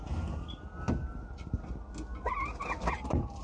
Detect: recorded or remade recorded